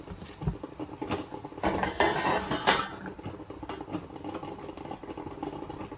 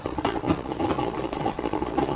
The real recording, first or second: first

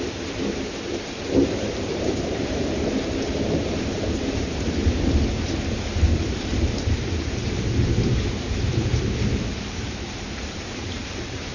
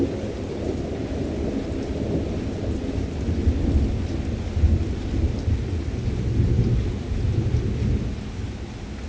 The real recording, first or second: second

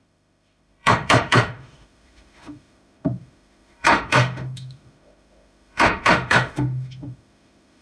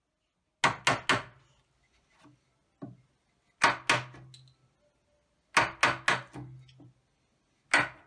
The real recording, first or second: second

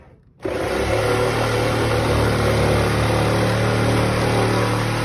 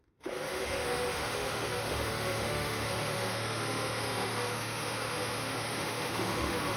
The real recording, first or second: first